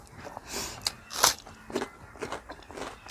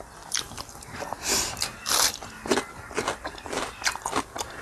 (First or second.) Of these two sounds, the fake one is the second